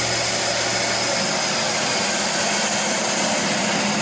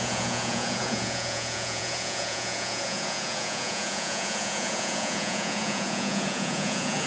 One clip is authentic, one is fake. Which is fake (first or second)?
second